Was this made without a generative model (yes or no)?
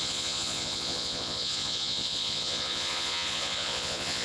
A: no